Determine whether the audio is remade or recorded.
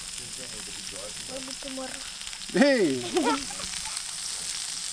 recorded